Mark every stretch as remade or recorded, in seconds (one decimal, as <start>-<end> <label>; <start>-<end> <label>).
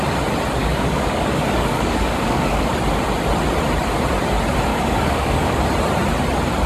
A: 0.0-0.6 recorded; 0.6-2.7 remade; 2.7-4.7 recorded; 4.7-5.6 remade; 5.6-6.7 recorded